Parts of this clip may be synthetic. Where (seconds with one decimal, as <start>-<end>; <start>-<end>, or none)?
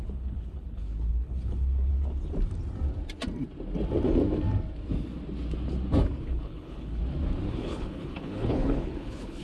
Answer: 0.0-1.9; 6.2-7.0; 7.5-9.4